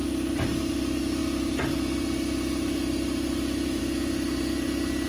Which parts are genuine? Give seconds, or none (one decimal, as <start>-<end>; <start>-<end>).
0.0-5.1